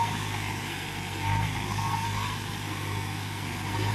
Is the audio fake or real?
fake